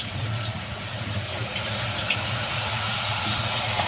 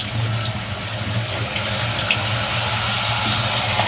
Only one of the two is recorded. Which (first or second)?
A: second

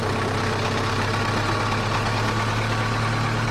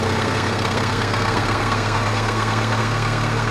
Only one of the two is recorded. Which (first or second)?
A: first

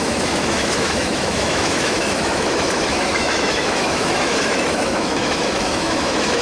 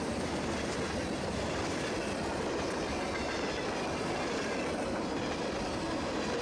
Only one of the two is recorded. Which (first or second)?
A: second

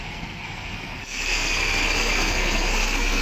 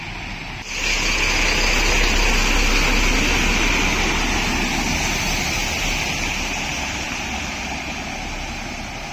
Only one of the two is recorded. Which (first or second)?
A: second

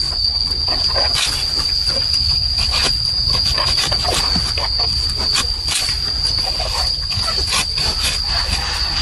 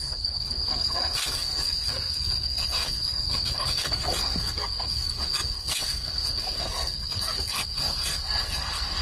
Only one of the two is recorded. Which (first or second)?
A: first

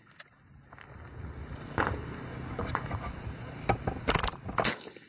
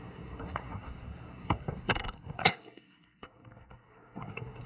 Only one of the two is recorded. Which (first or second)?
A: first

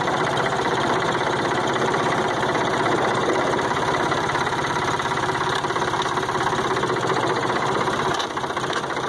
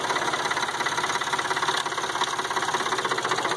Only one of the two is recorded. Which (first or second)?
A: second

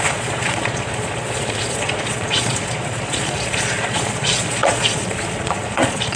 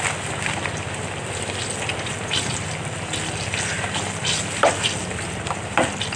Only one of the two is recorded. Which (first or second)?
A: second